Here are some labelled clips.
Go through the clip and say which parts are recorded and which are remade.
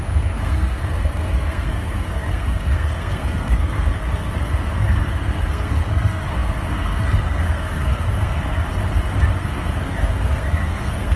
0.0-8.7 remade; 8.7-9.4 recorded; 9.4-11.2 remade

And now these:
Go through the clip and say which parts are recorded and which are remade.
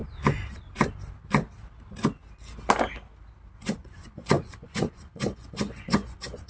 0.0-3.8 recorded; 3.8-6.5 remade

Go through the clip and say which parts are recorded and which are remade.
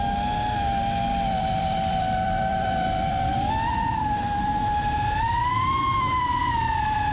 0.0-1.1 recorded; 1.1-3.5 remade; 3.5-7.1 recorded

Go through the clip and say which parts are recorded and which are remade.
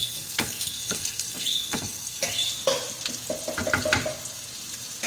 0.0-2.3 remade; 2.3-5.1 recorded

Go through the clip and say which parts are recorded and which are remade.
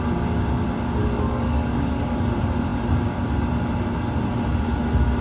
0.0-1.0 recorded; 1.0-2.2 remade; 2.2-5.2 recorded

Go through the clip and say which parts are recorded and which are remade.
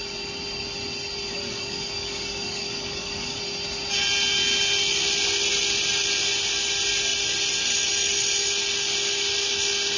0.0-1.3 recorded; 1.3-3.4 remade; 3.4-10.0 recorded